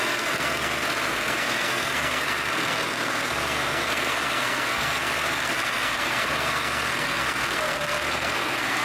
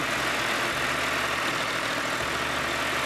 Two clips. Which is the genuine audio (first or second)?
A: second